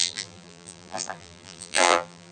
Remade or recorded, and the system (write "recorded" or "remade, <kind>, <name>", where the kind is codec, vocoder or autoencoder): remade, vocoder, BigVGAN v2